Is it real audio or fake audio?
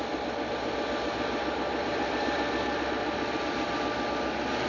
real